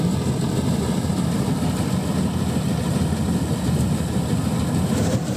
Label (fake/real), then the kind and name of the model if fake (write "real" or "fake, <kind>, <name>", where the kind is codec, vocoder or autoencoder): real